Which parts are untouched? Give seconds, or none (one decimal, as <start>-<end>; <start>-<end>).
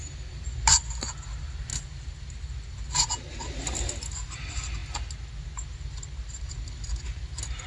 0.0-7.7